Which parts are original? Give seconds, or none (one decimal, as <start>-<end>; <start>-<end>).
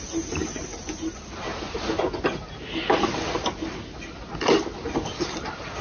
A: 0.0-5.8